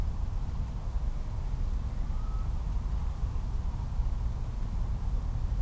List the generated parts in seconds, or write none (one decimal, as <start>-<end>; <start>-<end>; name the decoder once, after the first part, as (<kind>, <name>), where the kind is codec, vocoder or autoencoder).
0.0-0.7 (vocoder, BigVGAN v2)